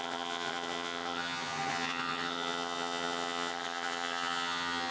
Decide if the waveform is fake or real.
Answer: fake